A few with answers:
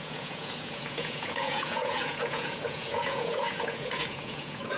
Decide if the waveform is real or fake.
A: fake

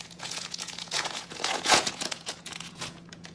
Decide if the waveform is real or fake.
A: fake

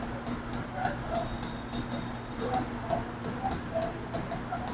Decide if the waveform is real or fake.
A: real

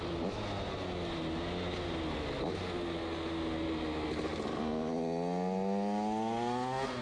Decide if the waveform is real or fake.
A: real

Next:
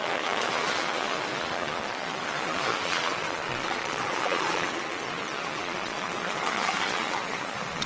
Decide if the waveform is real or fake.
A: fake